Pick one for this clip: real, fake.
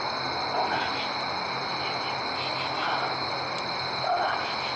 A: real